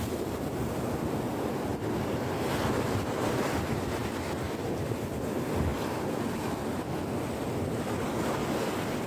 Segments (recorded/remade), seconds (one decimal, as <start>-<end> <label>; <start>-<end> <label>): 0.0-9.1 recorded